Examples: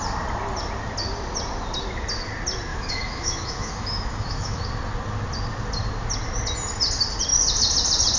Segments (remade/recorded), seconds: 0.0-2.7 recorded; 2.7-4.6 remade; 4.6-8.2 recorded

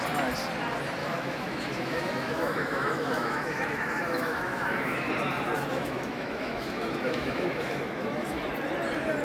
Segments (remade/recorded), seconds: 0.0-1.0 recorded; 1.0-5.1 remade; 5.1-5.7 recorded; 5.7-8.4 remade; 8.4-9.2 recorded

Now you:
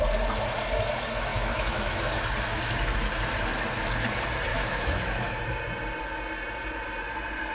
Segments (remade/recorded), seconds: 0.0-1.3 recorded; 1.3-2.0 remade; 2.0-4.5 recorded; 4.5-5.4 remade; 5.4-7.5 recorded

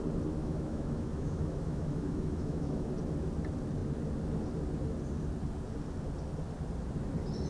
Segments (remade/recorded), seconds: 0.0-0.4 recorded; 0.4-2.9 remade; 2.9-7.5 recorded

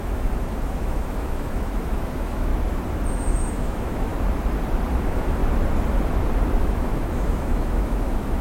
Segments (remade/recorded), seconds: 0.0-2.5 remade; 2.5-3.1 recorded; 3.1-4.1 remade; 4.1-4.9 recorded; 4.9-5.4 remade; 5.4-6.6 recorded; 6.6-8.4 remade